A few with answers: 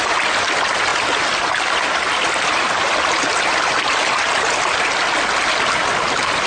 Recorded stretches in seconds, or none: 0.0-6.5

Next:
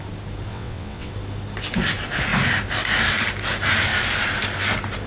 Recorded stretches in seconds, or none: 0.0-0.5; 1.1-5.1

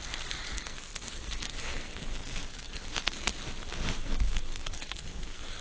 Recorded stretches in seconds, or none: 0.0-0.5; 3.3-4.0

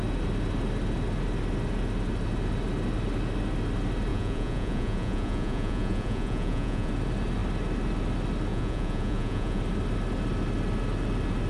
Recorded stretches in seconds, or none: 0.0-4.1; 6.9-8.5; 9.6-11.5

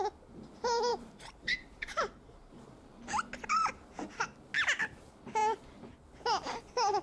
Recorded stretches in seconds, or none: 0.0-0.9; 2.9-7.0

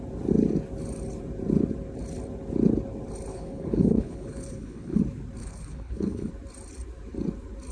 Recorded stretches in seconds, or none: 0.0-3.3; 5.0-5.4; 6.3-7.7

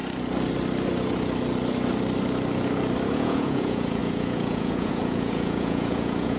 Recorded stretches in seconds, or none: 0.0-3.1